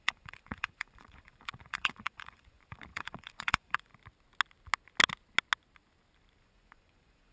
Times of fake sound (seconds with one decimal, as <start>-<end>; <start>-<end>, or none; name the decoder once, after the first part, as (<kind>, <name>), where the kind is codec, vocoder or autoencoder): 0.0-3.9 (vocoder, Vocos); 6.4-7.3